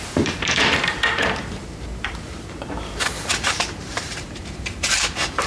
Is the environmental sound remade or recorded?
remade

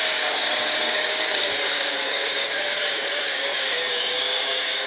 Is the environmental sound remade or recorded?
remade